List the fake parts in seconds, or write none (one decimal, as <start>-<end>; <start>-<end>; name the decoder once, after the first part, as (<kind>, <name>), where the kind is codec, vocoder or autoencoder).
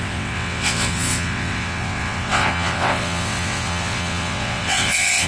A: 0.0-5.3 (vocoder, WaveNeXt)